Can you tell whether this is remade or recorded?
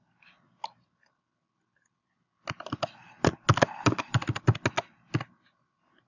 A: recorded